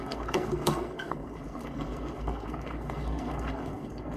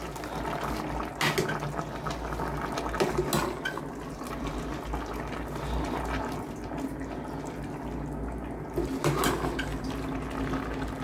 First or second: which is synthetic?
first